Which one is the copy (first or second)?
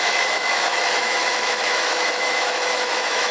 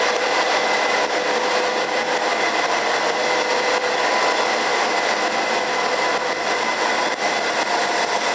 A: first